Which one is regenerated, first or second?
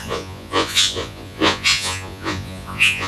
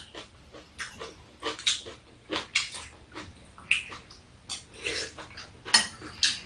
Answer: first